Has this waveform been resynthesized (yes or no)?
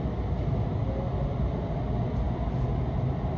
no